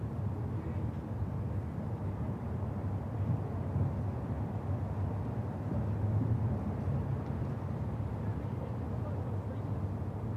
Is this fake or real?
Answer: real